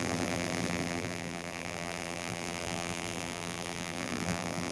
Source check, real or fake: fake